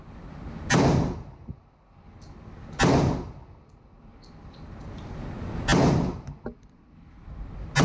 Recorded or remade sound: recorded